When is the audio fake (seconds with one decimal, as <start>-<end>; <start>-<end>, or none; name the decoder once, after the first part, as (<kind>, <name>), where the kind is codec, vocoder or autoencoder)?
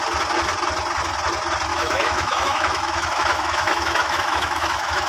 1.7-5.1 (autoencoder, DAC-VAE)